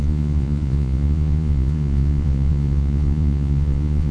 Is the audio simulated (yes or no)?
yes